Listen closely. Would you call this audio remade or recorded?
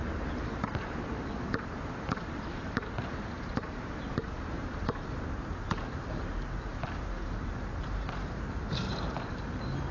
remade